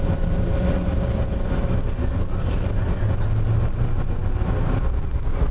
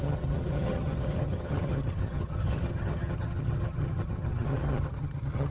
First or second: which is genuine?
first